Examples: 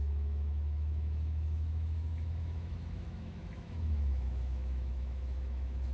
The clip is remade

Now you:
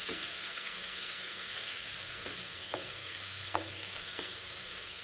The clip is remade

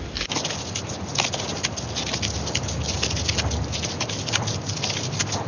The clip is recorded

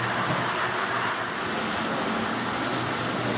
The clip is recorded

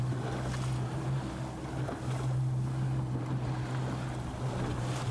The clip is recorded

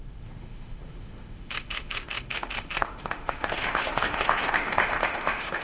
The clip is remade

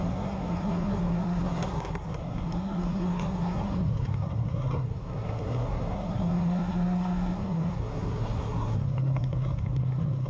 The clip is remade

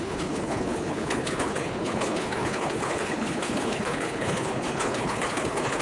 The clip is remade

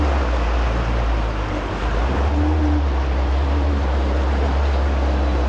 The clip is recorded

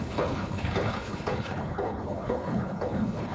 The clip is remade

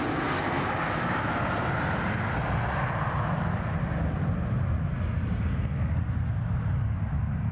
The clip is recorded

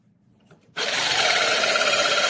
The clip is remade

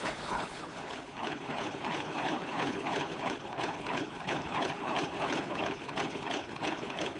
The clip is remade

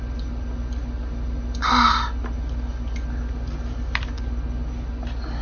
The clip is recorded